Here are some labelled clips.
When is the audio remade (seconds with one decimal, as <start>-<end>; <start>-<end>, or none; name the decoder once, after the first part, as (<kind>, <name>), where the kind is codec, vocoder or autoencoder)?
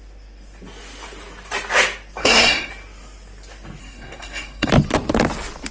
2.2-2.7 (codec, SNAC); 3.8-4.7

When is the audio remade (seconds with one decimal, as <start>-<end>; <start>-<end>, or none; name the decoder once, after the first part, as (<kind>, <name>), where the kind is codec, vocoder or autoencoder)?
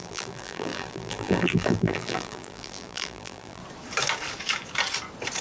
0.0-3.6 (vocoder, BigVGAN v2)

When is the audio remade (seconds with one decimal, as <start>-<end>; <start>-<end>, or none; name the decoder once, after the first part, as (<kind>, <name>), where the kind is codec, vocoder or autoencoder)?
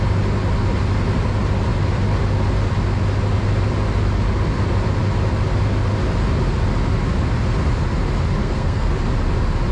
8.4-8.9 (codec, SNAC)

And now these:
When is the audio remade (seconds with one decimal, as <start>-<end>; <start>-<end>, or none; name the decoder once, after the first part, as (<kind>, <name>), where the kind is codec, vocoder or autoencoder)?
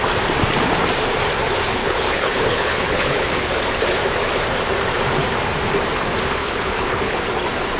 1.8-3.5 (codec, HILCodec); 6.4-7.2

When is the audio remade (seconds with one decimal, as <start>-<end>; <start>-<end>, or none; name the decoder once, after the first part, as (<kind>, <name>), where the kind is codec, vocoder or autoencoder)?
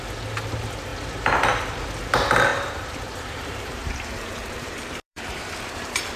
2.5-6.2 (vocoder, BigVGAN v2)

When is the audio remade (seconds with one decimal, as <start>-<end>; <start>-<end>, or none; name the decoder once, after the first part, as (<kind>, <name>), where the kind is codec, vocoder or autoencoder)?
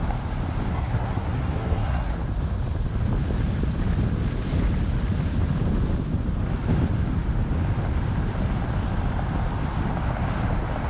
0.7-2.1 (codec, SNAC)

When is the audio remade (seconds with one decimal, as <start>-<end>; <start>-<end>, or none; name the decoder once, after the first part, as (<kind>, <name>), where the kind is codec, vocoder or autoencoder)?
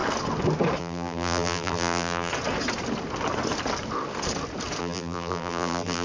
0.8-2.3 (vocoder, BigVGAN v2); 4.8-6.0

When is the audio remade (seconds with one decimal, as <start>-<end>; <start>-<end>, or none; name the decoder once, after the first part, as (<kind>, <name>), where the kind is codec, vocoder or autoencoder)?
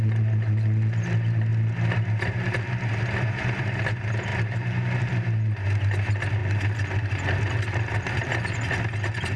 none